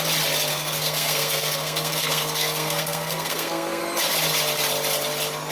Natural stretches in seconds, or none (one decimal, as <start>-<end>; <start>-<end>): 0.0-0.5; 3.8-5.5